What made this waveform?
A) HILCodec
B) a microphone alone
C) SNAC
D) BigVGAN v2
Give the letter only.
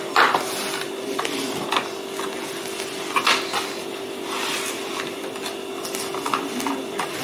B